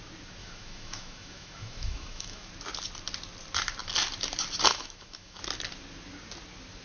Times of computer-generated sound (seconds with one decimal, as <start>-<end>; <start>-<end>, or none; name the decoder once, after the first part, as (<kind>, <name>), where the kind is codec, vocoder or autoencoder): 0.4-2.5 (autoencoder, DAC-VAE); 4.7-5.4